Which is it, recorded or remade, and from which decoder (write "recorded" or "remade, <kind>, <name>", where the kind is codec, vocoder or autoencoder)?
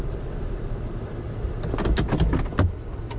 recorded